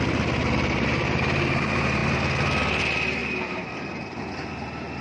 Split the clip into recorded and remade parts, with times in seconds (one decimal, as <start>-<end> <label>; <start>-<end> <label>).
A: 0.0-5.0 recorded